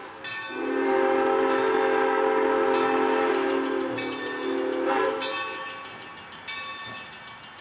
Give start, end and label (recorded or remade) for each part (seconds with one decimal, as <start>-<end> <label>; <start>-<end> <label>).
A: 0.0-7.6 recorded